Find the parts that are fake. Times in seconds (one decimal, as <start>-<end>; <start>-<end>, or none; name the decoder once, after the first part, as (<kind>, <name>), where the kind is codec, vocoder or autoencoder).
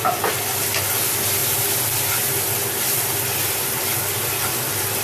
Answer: none